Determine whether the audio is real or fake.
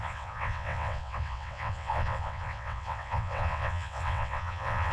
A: fake